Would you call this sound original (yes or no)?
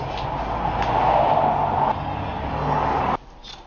yes